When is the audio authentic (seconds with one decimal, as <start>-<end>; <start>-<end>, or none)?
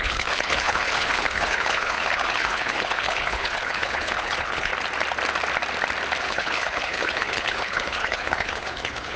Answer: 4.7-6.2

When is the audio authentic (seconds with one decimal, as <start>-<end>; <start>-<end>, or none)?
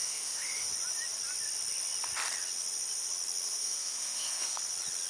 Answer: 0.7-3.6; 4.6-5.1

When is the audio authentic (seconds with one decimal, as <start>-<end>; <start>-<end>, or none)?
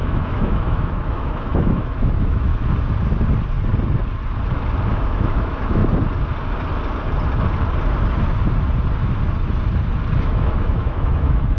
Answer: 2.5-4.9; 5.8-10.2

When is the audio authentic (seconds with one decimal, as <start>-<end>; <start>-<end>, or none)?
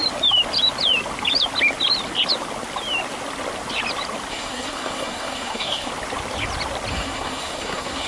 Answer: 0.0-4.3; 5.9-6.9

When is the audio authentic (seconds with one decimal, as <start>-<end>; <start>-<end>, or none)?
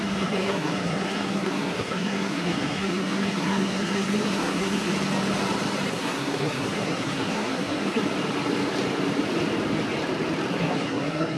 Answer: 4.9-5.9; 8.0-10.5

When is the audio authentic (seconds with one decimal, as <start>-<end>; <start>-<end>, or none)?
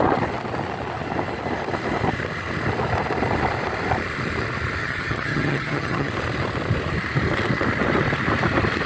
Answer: 0.0-4.8; 6.1-8.9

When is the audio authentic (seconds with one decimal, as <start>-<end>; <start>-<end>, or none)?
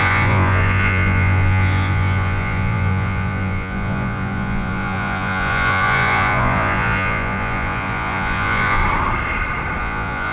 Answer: 8.8-9.8